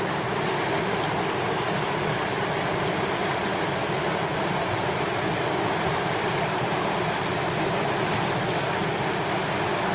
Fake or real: real